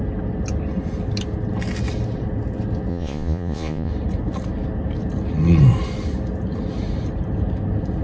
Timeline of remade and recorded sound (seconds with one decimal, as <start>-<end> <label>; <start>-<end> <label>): 0.0-2.9 recorded; 2.9-3.9 remade; 3.9-8.0 recorded